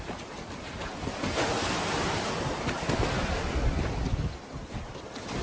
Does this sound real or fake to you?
real